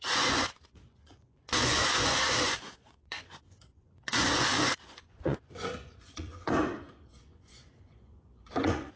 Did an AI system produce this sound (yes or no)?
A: yes